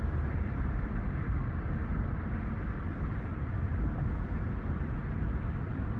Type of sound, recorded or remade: recorded